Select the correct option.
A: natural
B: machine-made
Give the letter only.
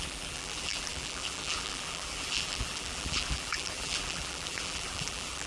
B